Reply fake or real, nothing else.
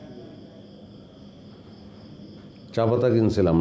real